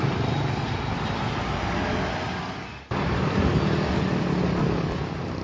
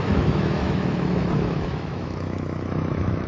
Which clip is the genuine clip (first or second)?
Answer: first